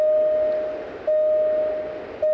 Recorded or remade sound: recorded